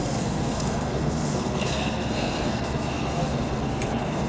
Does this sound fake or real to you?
fake